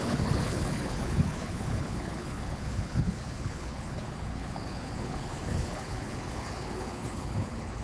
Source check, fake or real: fake